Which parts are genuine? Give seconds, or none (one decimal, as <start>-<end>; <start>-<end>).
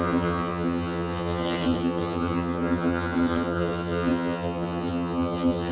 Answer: none